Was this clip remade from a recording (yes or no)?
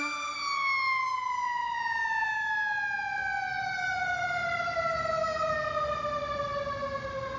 no